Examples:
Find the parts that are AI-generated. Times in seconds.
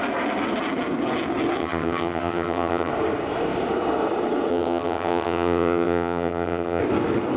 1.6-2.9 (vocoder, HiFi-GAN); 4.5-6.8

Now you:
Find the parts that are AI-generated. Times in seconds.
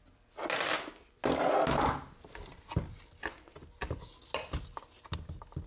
none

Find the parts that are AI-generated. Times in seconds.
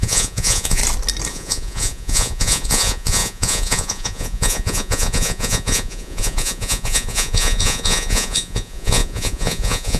0.0-0.8 (vocoder, Vocos); 1.3-10.0